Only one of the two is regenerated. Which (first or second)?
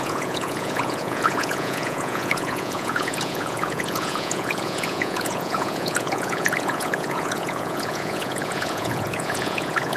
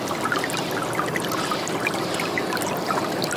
first